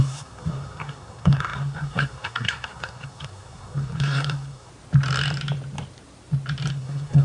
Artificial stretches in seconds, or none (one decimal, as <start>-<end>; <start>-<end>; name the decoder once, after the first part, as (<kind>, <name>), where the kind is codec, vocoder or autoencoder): 0.0-4.7 (codec, SNAC); 6.7-7.2